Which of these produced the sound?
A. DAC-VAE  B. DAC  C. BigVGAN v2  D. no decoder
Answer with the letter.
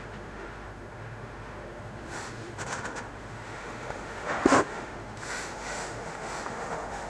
A